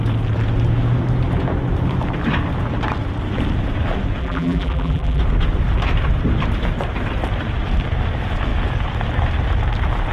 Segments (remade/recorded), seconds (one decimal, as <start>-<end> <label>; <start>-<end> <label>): 0.0-4.2 recorded; 4.2-5.2 remade; 5.2-10.1 recorded